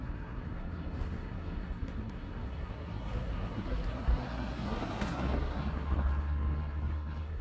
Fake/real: fake